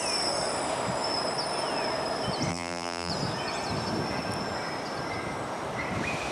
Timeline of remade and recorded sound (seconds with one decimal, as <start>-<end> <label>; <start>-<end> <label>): 0.0-2.5 recorded; 2.5-3.1 remade; 3.1-6.3 recorded